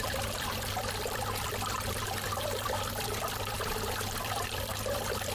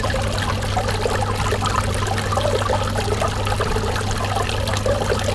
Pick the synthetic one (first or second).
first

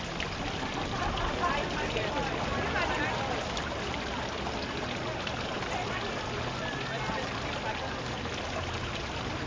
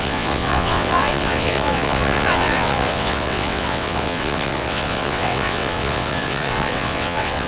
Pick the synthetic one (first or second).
second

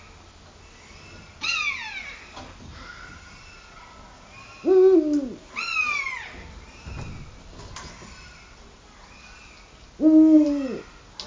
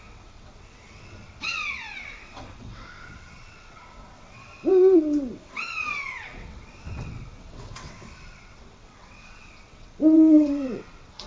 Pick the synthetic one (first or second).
second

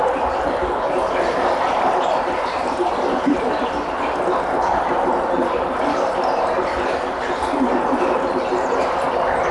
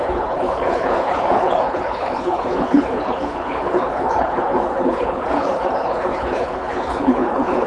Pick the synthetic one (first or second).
second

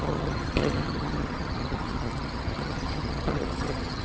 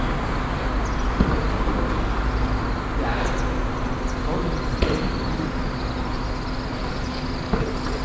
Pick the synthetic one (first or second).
first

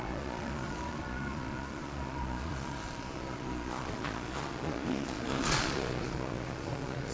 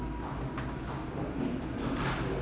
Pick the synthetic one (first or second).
first